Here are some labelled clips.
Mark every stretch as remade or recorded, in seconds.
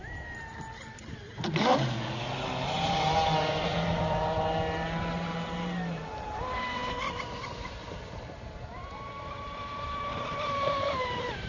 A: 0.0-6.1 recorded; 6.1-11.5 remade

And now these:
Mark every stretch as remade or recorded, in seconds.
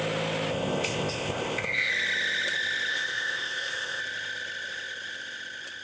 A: 0.0-0.5 recorded; 0.5-1.9 remade; 1.9-2.9 recorded; 2.9-4.0 remade; 4.0-5.8 recorded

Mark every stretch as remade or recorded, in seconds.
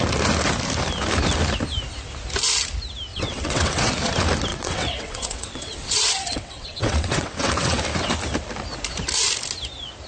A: 0.0-3.1 recorded; 3.1-3.9 remade; 3.9-4.5 recorded; 4.5-7.8 remade; 7.8-10.1 recorded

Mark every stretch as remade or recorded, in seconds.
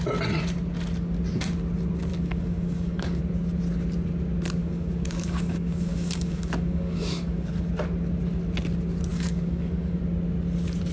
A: 0.0-2.1 recorded; 2.1-3.2 remade; 3.2-4.6 recorded; 4.6-7.7 remade; 7.7-9.1 recorded; 9.1-10.0 remade; 10.0-10.9 recorded